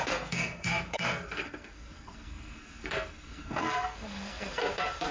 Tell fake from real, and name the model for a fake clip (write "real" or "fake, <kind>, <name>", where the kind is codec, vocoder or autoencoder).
fake, codec, SNAC